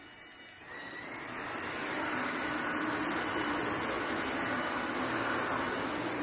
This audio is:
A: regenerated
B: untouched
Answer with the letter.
B